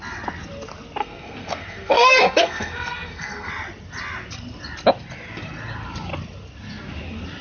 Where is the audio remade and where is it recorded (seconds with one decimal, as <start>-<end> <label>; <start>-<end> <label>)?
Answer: 0.0-1.0 recorded; 1.0-3.5 remade; 3.5-7.4 recorded

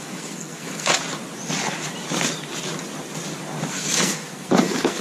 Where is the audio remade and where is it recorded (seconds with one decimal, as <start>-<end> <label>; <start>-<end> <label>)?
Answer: 0.0-0.9 remade; 0.9-3.7 recorded; 3.7-5.0 remade

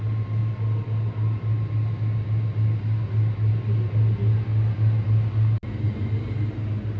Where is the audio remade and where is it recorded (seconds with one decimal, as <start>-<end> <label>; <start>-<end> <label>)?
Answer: 0.0-7.0 recorded

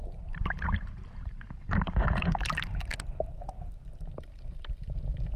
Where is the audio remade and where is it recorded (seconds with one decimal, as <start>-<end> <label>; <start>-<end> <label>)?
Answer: 0.0-2.9 remade; 2.9-4.1 recorded; 4.1-5.4 remade

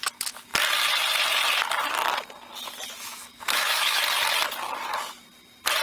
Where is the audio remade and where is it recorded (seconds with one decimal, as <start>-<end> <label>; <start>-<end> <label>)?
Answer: 0.0-3.0 recorded; 3.0-4.0 remade; 4.0-5.8 recorded

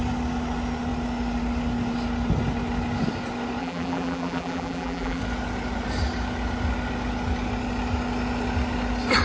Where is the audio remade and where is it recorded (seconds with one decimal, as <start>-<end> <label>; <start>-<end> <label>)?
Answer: 0.0-3.6 recorded; 3.6-5.2 remade; 5.2-9.2 recorded

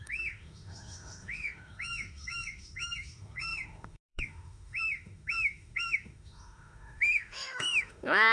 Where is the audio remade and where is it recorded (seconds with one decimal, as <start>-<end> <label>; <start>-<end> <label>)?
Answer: 0.0-8.3 remade